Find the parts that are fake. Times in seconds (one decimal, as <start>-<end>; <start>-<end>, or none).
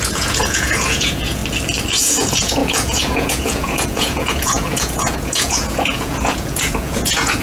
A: 0.0-1.4; 2.0-7.4